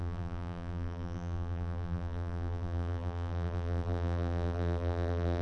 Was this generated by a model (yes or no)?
yes